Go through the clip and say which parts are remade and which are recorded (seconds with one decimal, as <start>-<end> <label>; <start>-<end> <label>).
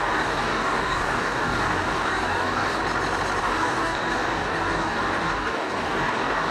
0.0-2.8 remade; 2.8-3.4 recorded; 3.4-6.5 remade